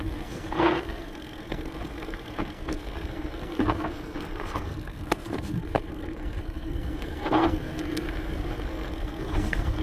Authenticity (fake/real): fake